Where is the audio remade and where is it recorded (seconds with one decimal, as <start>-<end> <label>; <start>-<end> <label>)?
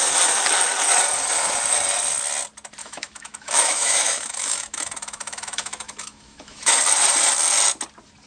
0.0-2.8 recorded; 2.8-6.7 remade; 6.7-8.3 recorded